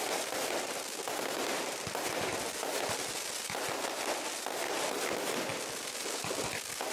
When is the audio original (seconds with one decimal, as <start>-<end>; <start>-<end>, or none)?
0.0-6.9